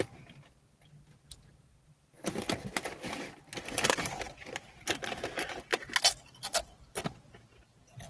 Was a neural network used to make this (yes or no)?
no